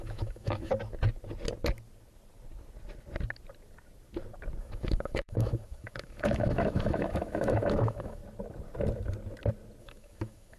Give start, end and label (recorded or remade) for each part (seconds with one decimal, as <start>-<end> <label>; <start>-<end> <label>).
0.0-0.7 remade; 0.7-4.6 recorded; 4.6-8.2 remade; 8.2-9.8 recorded; 9.8-10.6 remade